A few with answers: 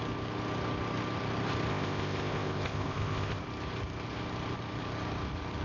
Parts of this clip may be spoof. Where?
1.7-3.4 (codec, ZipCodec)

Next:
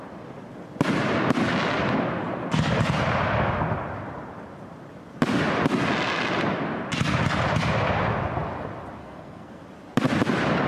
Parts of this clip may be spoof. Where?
9.0-9.6 (codec, SNAC)

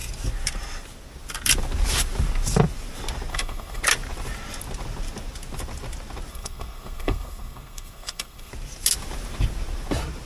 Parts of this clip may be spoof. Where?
3.3-3.8 (codec, SNAC); 6.3-8.5

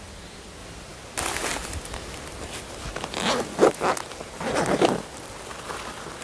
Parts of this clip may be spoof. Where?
none

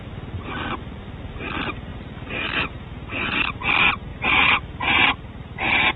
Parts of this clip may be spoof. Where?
1.9-3.6 (vocoder, BigVGAN v2); 4.1-5.1

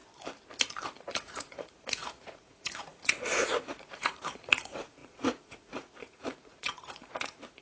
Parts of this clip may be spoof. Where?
1.2-7.6 (vocoder, Vocos)

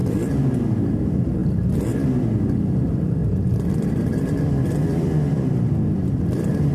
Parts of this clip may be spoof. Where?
0.9-3.2 (vocoder, BigVGAN v2); 3.7-6.7

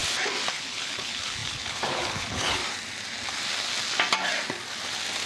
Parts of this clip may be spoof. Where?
0.5-2.6 (codec, HILCodec)